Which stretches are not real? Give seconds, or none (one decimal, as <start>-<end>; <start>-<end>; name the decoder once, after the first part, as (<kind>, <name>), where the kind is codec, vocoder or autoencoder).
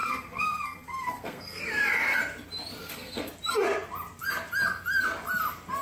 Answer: 0.0-1.6 (codec, SNAC); 2.8-3.3